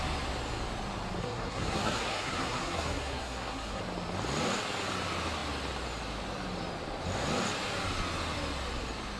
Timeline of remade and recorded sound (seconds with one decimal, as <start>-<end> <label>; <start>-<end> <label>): 0.0-1.2 recorded; 1.2-3.8 remade; 3.8-9.2 recorded